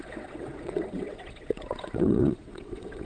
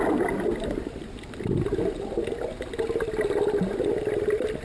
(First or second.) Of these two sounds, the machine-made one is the first